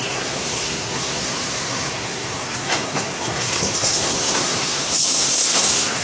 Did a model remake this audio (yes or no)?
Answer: yes